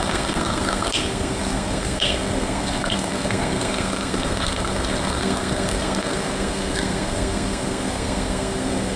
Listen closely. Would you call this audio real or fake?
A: fake